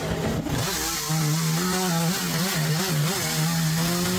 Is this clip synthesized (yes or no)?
no